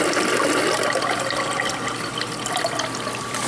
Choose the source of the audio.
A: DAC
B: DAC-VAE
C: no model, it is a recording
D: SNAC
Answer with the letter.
C